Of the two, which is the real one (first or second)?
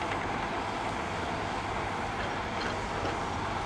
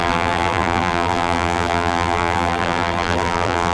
first